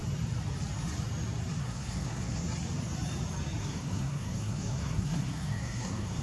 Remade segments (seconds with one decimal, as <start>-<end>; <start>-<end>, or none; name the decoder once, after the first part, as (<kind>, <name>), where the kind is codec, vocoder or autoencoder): 1.6-2.4 (codec, SNAC); 3.6-6.2

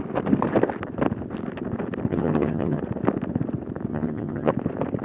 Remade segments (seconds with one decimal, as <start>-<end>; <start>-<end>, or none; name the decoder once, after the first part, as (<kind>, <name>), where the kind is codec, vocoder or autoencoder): 2.1-2.8 (vocoder, HiFi-GAN); 3.9-4.5

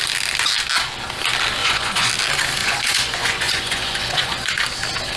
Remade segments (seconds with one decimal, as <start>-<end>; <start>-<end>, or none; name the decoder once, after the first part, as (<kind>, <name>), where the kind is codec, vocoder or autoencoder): 1.6-2.1 (vocoder, Vocos); 2.6-4.5

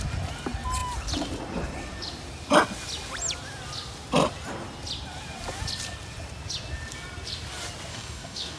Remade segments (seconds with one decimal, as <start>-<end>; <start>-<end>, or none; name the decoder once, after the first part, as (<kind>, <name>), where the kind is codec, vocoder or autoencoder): 7.9-8.6 (codec, DAC)

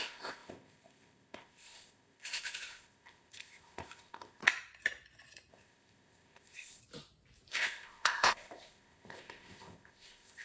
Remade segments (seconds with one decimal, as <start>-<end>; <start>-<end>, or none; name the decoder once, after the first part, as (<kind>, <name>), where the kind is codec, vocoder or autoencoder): 0.0-4.4 (codec, ZipCodec); 5.5-6.8; 7.5-10.4